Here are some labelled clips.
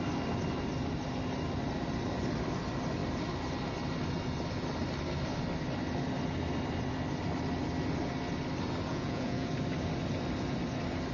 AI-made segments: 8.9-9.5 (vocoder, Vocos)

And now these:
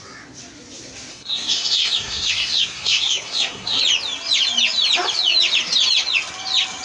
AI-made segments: 1.1-3.8 (codec, SNAC)